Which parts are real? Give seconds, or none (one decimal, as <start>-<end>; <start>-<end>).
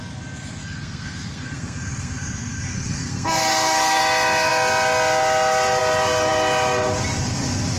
0.0-0.6; 4.0-7.8